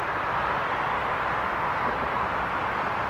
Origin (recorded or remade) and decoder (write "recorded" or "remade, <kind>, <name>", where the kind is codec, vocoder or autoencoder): recorded